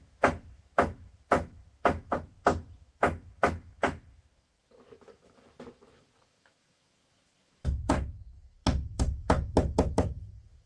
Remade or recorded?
remade